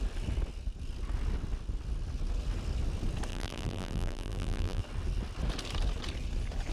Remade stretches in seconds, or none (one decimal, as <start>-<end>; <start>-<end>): 3.3-4.8